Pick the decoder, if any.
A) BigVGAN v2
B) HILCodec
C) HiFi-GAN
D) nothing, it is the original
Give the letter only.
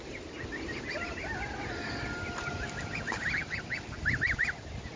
D